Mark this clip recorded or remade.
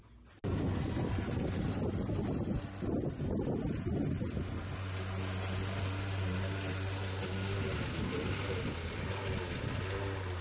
recorded